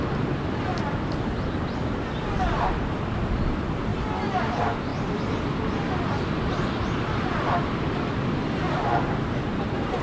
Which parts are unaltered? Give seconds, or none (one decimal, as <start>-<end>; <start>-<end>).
0.0-10.0